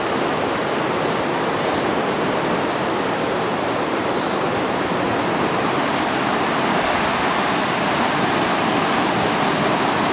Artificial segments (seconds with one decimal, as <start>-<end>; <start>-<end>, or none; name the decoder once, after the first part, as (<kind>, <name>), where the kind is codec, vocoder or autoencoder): none